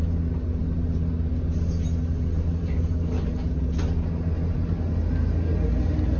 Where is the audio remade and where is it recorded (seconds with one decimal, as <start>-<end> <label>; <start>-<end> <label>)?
0.0-6.2 recorded